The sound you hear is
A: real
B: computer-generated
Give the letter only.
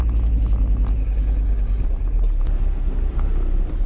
A